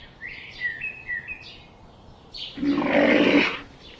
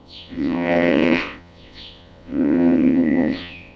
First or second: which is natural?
first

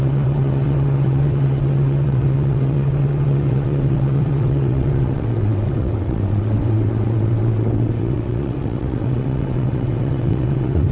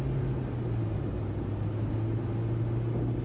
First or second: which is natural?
second